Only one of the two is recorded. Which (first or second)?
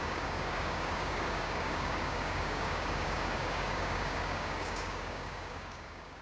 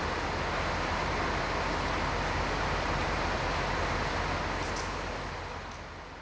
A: second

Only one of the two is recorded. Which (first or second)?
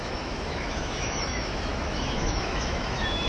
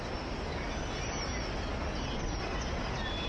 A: second